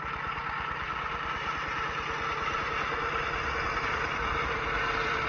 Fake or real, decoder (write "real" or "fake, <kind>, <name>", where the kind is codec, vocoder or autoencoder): real